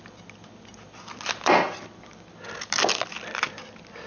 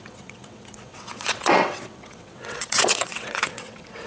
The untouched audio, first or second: first